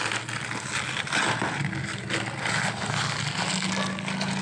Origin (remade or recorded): recorded